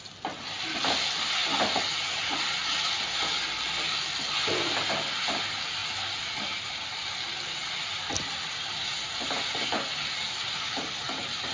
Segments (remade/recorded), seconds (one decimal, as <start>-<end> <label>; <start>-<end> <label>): 0.0-11.5 recorded